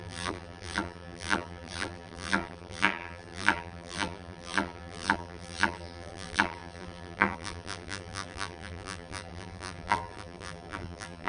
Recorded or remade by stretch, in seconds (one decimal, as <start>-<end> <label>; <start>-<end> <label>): 0.0-11.3 remade